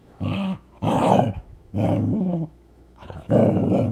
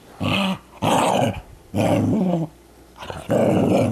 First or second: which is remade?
first